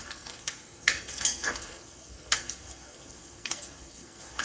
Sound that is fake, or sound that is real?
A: fake